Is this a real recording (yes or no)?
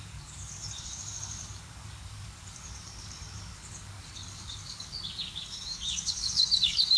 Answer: no